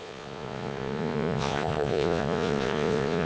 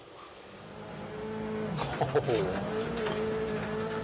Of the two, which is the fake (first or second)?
first